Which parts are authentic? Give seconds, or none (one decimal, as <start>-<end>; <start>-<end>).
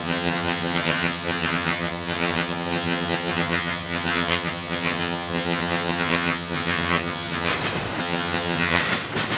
7.5-8.0; 8.8-9.4